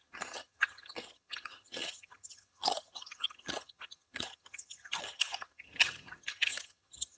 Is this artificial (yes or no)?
yes